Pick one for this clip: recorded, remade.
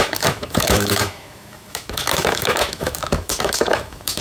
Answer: remade